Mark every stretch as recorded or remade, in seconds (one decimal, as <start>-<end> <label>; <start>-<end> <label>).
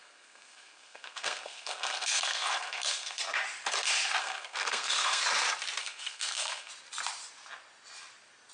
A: 0.0-3.2 remade; 3.2-4.2 recorded; 4.2-5.2 remade; 5.2-5.8 recorded; 5.8-6.7 remade; 6.7-8.5 recorded